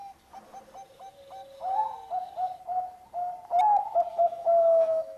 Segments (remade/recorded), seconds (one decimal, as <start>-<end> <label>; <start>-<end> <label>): 0.0-4.1 recorded; 4.1-5.2 remade

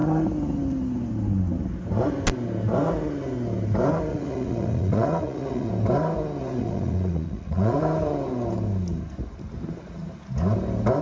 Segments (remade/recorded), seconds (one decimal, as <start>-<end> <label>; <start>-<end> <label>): 0.0-4.1 recorded; 4.1-5.7 remade; 5.7-6.4 recorded; 6.4-7.8 remade; 7.8-11.0 recorded

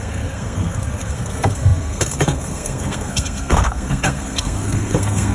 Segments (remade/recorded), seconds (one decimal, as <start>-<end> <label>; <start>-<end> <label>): 0.0-5.3 remade

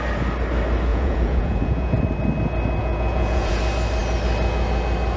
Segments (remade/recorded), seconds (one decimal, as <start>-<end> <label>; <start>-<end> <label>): 0.0-0.9 recorded; 0.9-2.0 remade; 2.0-2.8 recorded; 2.8-3.6 remade; 3.6-5.2 recorded

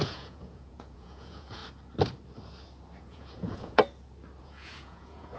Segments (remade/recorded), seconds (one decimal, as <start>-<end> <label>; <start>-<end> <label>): 0.0-1.6 remade; 1.6-3.0 recorded; 3.0-3.8 remade; 3.8-4.4 recorded; 4.4-5.4 remade